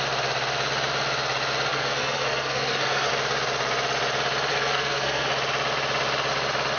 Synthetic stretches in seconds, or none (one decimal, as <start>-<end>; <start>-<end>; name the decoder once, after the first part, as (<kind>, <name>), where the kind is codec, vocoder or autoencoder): 1.7-3.1 (codec, SNAC); 4.5-5.3